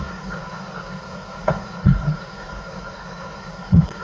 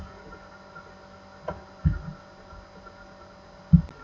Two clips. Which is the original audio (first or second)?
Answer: second